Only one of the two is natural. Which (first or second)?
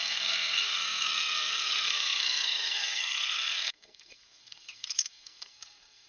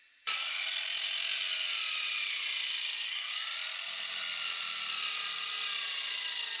second